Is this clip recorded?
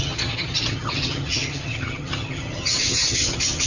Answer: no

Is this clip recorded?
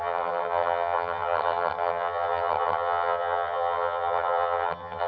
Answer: no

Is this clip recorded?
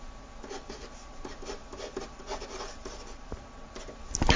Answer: yes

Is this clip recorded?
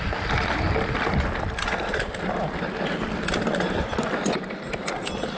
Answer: yes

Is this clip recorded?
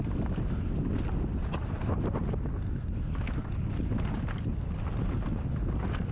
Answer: yes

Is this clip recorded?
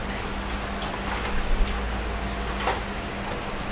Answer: yes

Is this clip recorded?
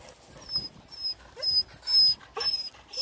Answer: yes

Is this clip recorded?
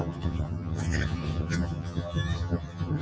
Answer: no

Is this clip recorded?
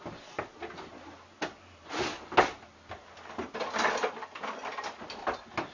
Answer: yes